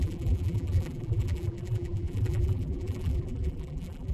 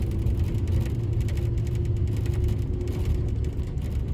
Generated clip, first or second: first